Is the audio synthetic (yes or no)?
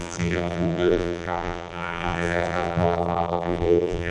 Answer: yes